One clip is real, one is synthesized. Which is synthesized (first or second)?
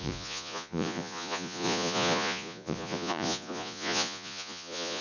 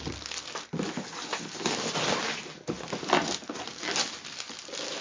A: first